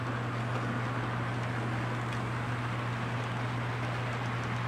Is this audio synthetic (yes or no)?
no